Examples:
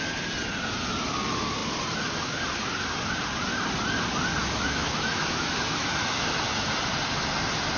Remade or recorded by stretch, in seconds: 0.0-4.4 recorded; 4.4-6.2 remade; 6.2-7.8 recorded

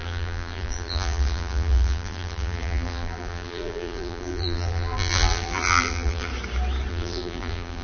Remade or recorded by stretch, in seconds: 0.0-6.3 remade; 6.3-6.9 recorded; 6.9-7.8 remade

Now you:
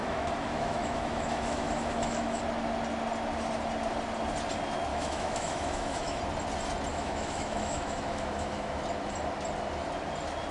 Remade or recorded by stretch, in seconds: 0.0-2.4 remade; 2.4-4.9 recorded; 4.9-6.2 remade; 6.2-6.9 recorded; 6.9-8.8 remade; 8.8-10.5 recorded

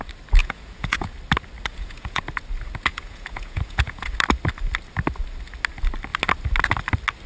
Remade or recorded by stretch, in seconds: 0.0-0.4 recorded; 0.4-1.1 remade; 1.1-1.7 recorded; 1.7-2.2 remade; 2.2-2.9 recorded; 2.9-4.1 remade; 4.1-7.3 recorded

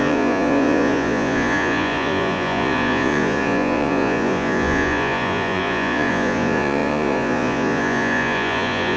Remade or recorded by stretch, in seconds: 0.0-9.0 remade

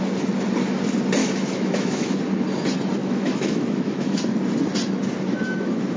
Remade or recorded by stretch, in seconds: 0.0-1.2 recorded; 1.2-2.2 remade; 2.2-3.0 recorded; 3.0-4.2 remade; 4.2-5.3 recorded; 5.3-6.0 remade